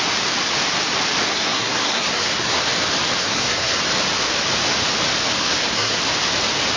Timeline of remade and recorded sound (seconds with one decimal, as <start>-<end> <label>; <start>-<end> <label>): 0.0-1.3 recorded; 1.3-2.6 remade; 2.6-3.2 recorded; 3.2-3.8 remade; 3.8-5.4 recorded; 5.4-6.0 remade; 6.0-6.8 recorded